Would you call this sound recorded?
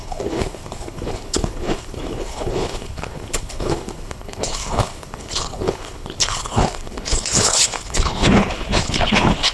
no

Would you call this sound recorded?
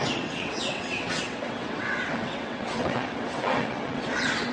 no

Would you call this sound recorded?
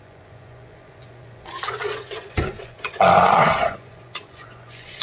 no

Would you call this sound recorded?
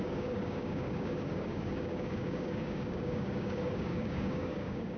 no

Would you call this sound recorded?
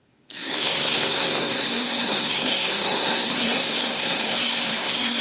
no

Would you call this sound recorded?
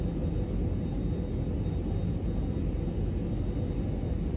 yes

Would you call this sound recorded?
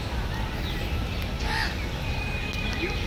yes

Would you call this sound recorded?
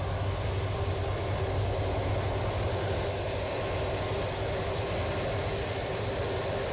yes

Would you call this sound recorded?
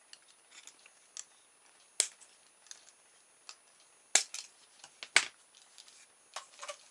yes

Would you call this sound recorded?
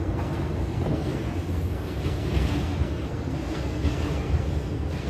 no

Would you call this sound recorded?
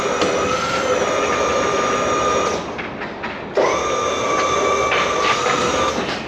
yes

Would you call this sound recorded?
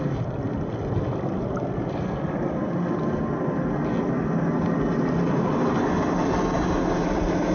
yes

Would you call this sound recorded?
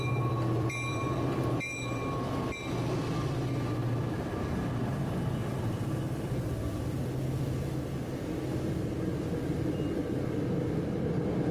no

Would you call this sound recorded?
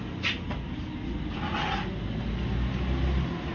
yes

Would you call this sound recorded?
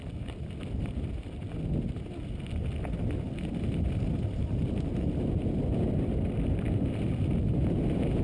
yes